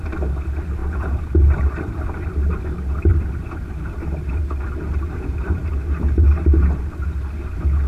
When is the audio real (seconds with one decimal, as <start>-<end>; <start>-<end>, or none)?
0.0-0.8; 2.6-3.1; 6.8-7.9